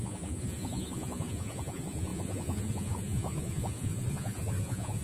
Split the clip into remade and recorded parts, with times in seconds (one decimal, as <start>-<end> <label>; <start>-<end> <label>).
0.0-5.0 remade